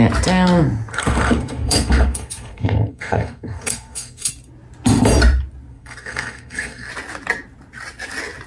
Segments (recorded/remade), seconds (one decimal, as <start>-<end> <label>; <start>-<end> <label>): 0.0-0.9 recorded; 0.9-4.3 remade; 4.3-5.7 recorded; 5.7-6.9 remade; 6.9-8.5 recorded